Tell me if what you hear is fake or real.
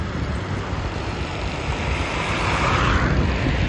real